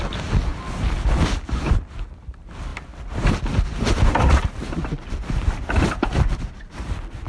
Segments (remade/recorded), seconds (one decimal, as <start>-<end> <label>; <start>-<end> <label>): 0.0-7.3 recorded